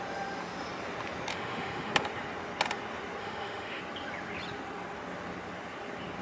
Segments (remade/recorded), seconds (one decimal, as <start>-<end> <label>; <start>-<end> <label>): 0.0-1.3 recorded; 1.3-1.9 remade; 1.9-3.2 recorded; 3.2-3.8 remade; 3.8-6.2 recorded